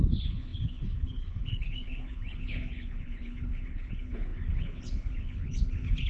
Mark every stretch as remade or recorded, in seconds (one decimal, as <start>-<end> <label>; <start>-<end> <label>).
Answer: 0.0-6.1 remade